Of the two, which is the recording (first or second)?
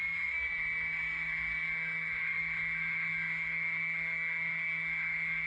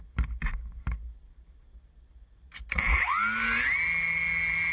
second